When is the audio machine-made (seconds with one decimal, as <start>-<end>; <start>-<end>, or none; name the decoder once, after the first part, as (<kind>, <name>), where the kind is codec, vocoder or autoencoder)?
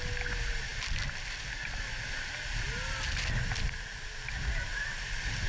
none